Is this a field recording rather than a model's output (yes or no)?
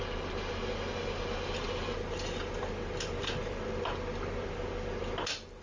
yes